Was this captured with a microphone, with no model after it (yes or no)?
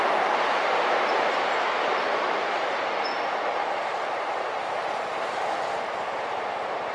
no